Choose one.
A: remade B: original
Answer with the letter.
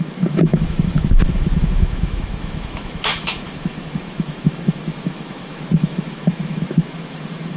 A